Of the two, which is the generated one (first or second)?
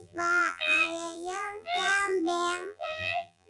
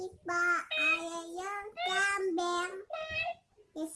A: first